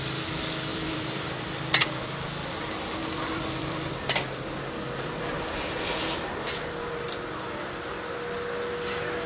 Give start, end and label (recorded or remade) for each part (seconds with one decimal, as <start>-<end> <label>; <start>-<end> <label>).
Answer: 0.0-0.7 recorded; 0.7-2.5 remade; 2.5-3.0 recorded; 3.0-3.9 remade; 3.9-9.3 recorded